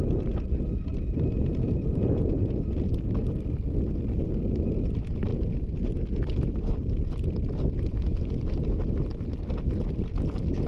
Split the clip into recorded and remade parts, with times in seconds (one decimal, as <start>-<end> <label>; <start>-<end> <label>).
0.0-10.7 recorded